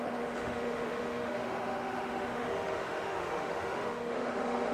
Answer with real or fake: fake